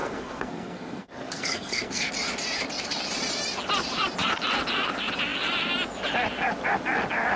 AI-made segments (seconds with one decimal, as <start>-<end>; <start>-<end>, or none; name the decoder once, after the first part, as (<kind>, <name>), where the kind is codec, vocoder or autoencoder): 0.0-2.1 (codec, SNAC)